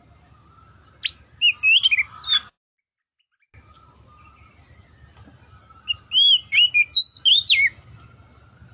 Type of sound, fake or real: real